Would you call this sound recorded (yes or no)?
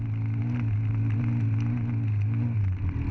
yes